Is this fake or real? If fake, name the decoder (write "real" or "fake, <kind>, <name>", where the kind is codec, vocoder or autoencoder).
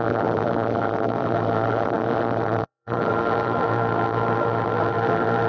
fake, vocoder, BigVGAN v2